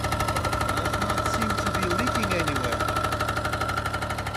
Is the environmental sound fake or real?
real